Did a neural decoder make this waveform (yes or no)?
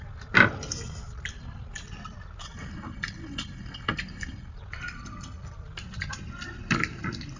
no